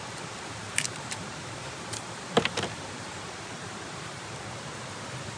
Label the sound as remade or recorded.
remade